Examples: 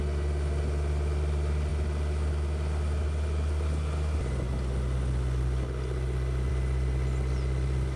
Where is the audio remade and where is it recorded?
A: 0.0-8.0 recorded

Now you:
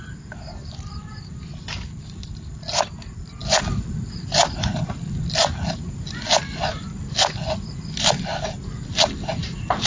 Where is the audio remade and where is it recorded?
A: 0.0-9.9 recorded